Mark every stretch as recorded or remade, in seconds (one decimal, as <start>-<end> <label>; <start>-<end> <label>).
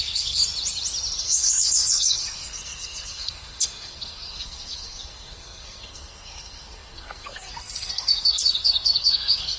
0.0-0.4 remade; 0.4-1.2 recorded; 1.2-9.6 remade